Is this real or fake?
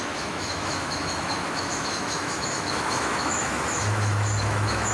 fake